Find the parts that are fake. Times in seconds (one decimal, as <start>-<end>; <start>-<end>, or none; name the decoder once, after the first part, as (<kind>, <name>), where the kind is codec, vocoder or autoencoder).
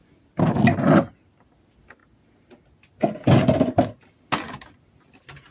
none